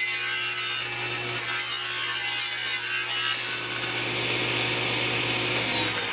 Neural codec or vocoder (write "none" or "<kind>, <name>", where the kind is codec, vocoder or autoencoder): none